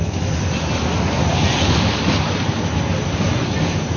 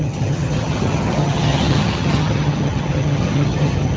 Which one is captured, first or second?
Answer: first